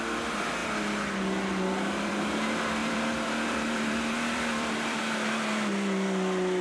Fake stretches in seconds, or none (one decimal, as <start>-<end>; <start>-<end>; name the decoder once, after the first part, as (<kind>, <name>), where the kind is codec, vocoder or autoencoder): 2.8-5.0 (vocoder, BigVGAN v2)